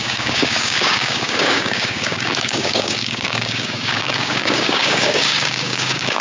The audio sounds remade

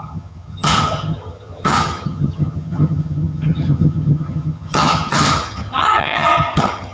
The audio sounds remade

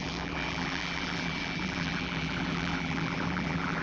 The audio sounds remade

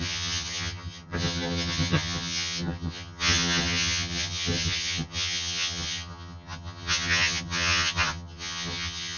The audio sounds remade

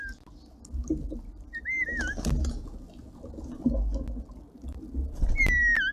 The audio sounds recorded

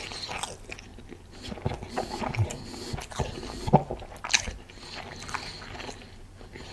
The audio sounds recorded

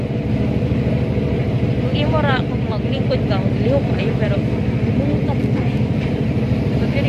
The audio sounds remade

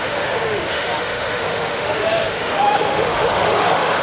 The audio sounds remade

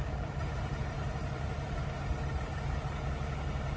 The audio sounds remade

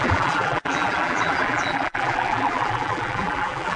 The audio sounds remade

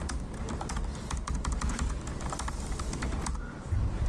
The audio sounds recorded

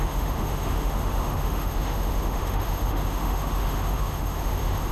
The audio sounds remade